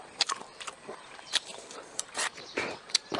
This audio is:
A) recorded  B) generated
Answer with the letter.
B